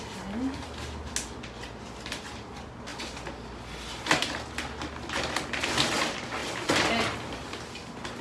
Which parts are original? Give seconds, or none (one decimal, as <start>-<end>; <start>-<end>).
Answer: 0.0-8.2